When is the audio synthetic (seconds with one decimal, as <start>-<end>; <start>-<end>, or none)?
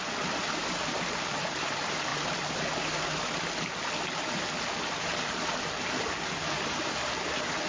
none